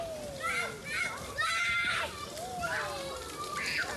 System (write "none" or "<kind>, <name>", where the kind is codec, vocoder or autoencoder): none